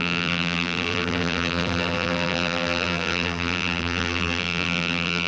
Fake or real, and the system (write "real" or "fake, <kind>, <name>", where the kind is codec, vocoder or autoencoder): fake, vocoder, BigVGAN v2